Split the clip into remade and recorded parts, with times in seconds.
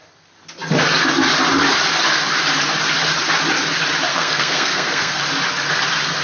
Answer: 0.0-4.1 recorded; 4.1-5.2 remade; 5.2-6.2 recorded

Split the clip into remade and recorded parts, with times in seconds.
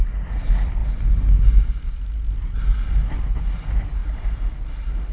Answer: 0.0-5.1 recorded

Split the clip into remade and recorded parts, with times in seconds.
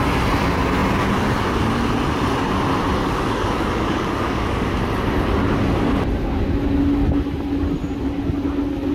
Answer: 0.0-3.0 recorded; 3.0-4.8 remade; 4.8-8.9 recorded